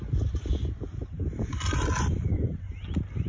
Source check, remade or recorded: recorded